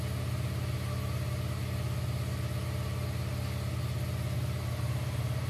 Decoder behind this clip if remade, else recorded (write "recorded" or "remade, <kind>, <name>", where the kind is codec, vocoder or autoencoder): recorded